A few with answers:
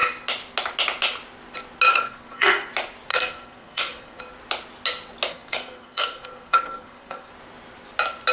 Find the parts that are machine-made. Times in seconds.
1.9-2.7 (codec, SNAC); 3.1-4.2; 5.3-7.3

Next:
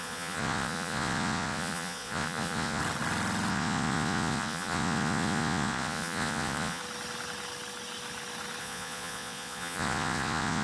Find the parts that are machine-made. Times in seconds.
0.0-2.8 (vocoder, Vocos); 3.5-6.8; 8.6-10.6

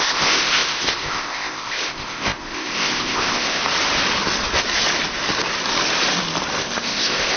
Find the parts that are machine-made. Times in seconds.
0.0-3.6 (codec, ZipCodec); 6.6-7.4

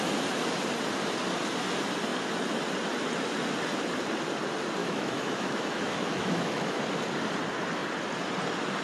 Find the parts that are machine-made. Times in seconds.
4.8-6.8 (autoencoder, DAC-VAE)

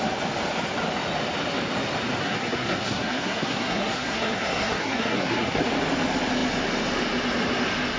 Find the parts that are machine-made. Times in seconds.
2.2-5.7 (codec, SNAC)

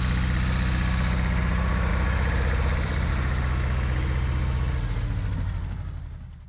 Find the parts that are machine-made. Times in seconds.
1.9-3.1 (vocoder, BigVGAN v2)

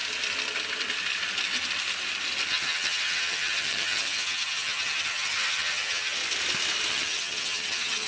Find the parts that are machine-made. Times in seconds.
2.5-6.2 (vocoder, HiFi-GAN); 6.9-8.1